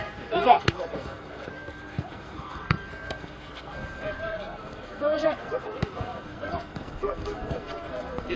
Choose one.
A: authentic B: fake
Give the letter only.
B